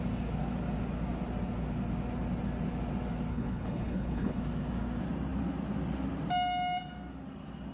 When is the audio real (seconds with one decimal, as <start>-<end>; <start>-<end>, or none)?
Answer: 0.0-3.3; 4.4-7.7